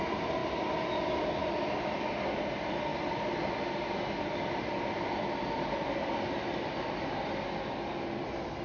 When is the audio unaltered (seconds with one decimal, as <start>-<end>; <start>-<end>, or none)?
0.0-8.6